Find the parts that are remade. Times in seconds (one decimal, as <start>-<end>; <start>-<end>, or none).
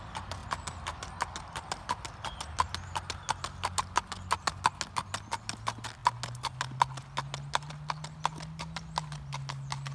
none